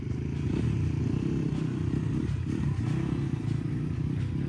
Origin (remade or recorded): recorded